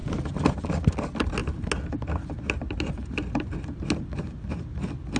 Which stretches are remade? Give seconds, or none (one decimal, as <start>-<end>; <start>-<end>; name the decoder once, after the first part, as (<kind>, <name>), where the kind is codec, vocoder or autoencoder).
none